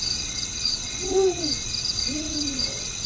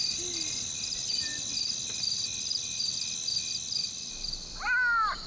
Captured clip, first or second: second